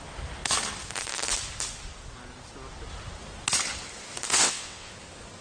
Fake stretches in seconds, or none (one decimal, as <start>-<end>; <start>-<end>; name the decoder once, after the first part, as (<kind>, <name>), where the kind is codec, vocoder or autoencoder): 4.3-4.9 (vocoder, WaveNeXt)